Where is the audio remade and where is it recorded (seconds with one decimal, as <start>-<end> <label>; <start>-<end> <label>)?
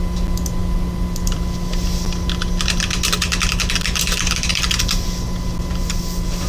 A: 0.0-0.6 recorded; 0.6-4.5 remade; 4.5-6.5 recorded